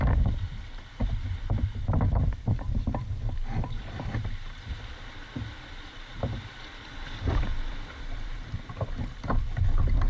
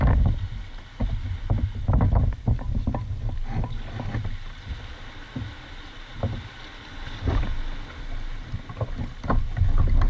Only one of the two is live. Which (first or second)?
second